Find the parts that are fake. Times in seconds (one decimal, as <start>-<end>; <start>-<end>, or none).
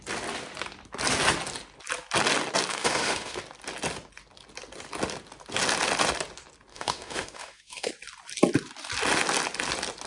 2.7-3.4; 6.7-7.9